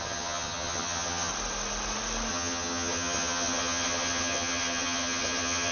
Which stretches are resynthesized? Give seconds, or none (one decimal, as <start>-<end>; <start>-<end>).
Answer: 0.0-1.3; 2.3-5.7